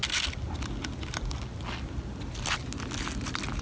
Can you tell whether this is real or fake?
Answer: real